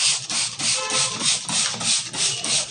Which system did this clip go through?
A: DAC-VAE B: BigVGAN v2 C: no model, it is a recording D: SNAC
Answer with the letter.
C